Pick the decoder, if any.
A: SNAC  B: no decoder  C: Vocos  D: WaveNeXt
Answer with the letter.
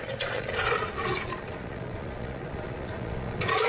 C